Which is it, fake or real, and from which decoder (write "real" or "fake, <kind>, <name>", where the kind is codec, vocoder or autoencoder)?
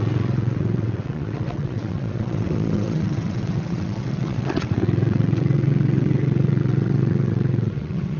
fake, vocoder, WaveNeXt